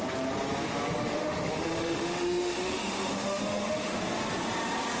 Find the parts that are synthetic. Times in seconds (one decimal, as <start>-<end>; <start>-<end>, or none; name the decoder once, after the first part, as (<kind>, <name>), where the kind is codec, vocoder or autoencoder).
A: 1.0-4.0 (autoencoder, DAC-VAE)